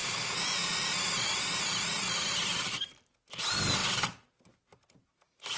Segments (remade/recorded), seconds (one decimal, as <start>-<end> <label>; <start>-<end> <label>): 0.0-3.4 recorded; 3.4-3.8 remade; 3.8-5.6 recorded